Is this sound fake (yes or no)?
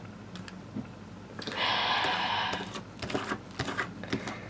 no